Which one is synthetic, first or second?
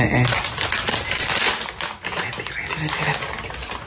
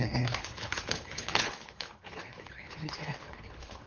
second